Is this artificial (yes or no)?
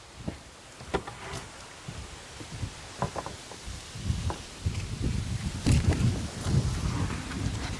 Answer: no